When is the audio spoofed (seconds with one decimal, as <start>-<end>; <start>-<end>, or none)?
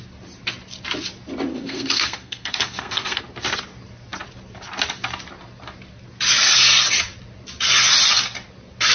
1.5-3.2